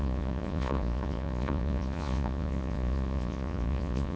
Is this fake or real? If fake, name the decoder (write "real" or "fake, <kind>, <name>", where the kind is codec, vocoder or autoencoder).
fake, vocoder, Vocos